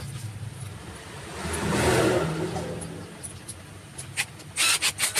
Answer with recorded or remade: recorded